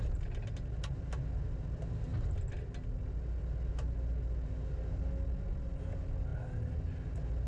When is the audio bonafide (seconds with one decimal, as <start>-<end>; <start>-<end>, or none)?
0.0-7.5